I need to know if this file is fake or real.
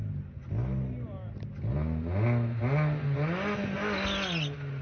real